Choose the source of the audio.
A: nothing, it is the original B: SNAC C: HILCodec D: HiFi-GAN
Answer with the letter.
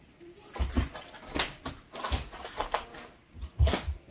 A